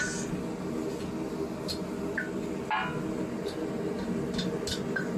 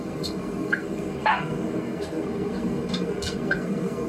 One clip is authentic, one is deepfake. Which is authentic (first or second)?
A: first